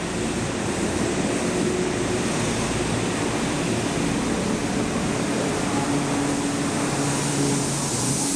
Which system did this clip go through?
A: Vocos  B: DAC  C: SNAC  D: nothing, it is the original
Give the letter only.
D